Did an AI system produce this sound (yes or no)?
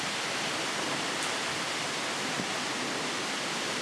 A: no